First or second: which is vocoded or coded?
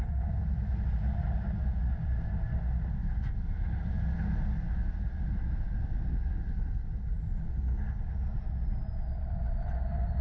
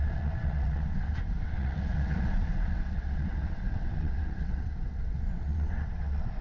second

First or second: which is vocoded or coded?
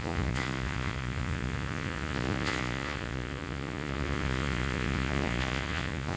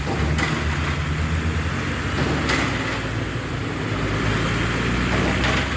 first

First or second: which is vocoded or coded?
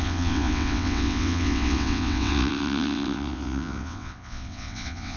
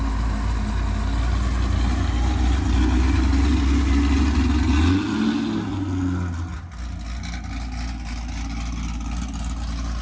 first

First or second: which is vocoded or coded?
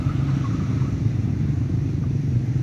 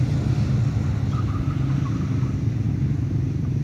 first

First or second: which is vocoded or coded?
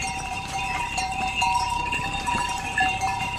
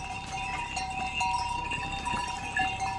first